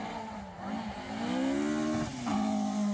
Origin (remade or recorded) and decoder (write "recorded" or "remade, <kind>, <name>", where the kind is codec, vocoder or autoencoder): recorded